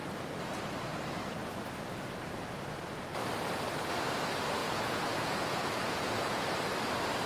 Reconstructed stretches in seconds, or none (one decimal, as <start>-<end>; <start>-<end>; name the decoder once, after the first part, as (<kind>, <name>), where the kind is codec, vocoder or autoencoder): 4.6-6.4 (vocoder, Vocos)

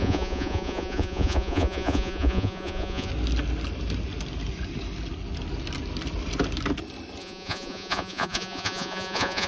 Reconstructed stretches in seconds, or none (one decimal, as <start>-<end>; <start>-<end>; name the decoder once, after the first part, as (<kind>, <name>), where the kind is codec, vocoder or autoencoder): 0.0-3.1 (vocoder, Vocos); 7.2-9.5

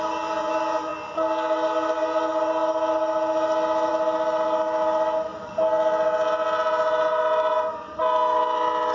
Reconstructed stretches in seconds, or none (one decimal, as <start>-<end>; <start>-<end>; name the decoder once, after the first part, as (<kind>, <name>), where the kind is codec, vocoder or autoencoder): none